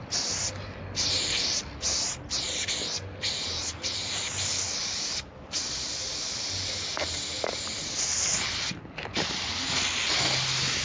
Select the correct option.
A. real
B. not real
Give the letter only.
A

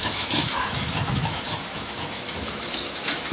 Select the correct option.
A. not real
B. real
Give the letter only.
A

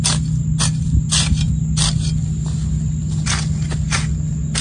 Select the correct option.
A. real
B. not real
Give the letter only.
A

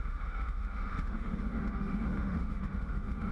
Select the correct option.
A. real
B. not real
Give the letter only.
B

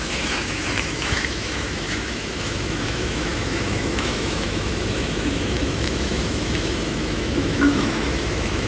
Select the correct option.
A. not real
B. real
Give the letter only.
A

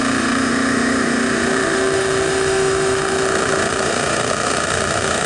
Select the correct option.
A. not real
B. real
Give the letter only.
A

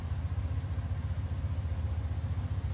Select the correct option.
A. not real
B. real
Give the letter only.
B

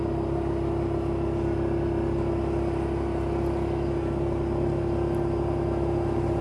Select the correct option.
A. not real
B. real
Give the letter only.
B